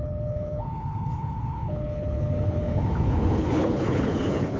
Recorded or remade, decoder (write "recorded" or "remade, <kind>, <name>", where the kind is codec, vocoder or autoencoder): remade, codec, HILCodec